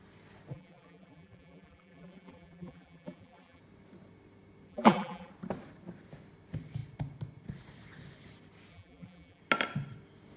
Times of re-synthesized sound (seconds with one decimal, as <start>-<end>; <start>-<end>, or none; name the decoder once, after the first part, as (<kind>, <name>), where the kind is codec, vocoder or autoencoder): 0.5-3.6 (vocoder, BigVGAN v2); 4.7-5.3; 8.7-9.4